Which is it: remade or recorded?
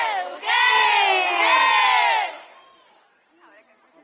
recorded